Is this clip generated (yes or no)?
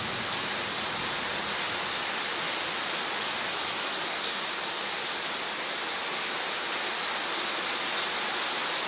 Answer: no